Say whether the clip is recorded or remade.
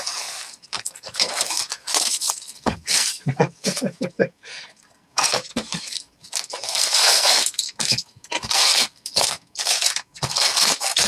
remade